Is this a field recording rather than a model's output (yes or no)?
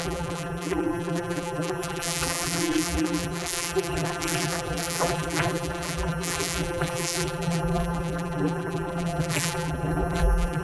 no